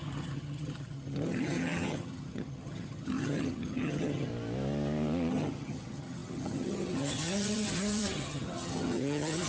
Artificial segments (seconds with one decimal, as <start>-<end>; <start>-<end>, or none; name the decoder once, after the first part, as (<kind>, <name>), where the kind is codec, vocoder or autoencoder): 0.0-4.3 (vocoder, HiFi-GAN); 5.3-9.5